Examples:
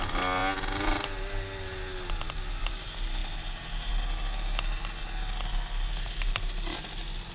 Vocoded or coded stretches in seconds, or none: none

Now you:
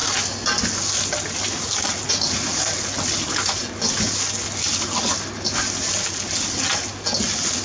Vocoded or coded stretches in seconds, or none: none

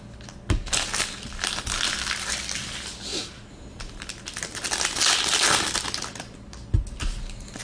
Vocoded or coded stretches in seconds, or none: none

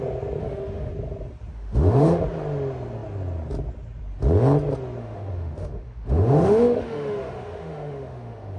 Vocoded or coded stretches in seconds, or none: 0.4-0.9; 1.5-2.2; 5.0-8.6